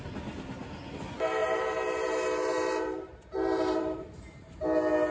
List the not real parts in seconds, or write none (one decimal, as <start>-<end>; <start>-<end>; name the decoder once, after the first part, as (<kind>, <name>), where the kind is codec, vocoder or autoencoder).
1.4-4.5 (vocoder, BigVGAN v2)